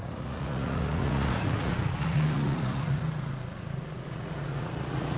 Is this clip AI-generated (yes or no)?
yes